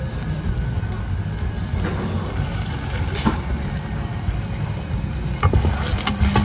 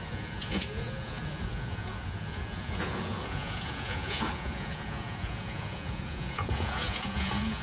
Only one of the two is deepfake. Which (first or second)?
second